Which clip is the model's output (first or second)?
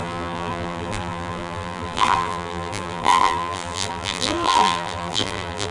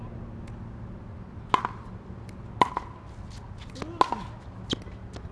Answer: first